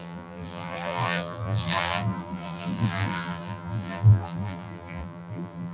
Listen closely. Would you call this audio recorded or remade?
remade